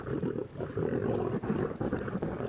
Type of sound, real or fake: real